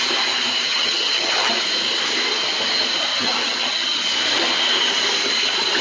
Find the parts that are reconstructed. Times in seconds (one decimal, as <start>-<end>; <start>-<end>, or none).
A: 0.7-1.5; 3.1-4.0